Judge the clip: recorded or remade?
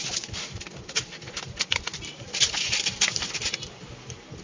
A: recorded